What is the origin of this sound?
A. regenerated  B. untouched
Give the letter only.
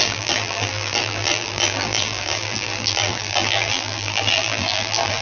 A